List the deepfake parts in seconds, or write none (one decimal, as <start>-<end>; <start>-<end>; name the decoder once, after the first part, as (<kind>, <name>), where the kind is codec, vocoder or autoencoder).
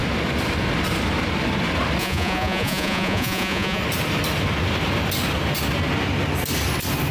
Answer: 2.0-3.8 (vocoder, Vocos)